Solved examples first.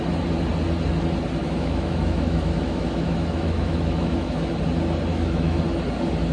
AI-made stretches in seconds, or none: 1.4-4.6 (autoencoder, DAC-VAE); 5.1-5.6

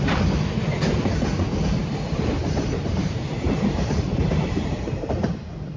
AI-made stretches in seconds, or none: 1.8-5.3 (vocoder, BigVGAN v2)

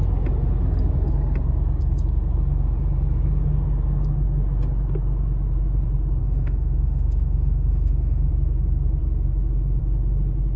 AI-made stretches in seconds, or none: 6.2-8.3 (autoencoder, DAC-VAE)

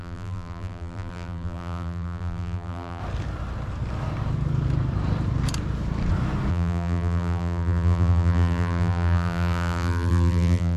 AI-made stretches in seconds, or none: 0.0-3.0 (vocoder, BigVGAN v2); 6.5-10.8

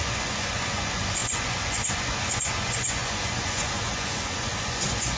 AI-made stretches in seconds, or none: 0.0-5.2 (vocoder, Vocos)

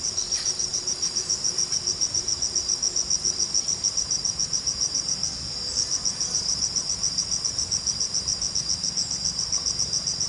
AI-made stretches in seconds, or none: none